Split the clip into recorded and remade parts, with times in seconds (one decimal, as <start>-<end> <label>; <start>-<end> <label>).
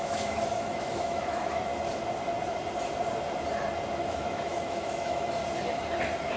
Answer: 0.0-1.7 remade; 1.7-4.1 recorded; 4.1-5.4 remade; 5.4-6.4 recorded